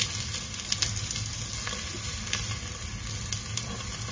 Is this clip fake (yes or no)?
no